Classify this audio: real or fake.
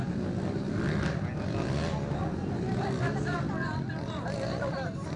real